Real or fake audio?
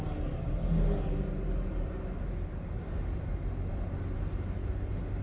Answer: real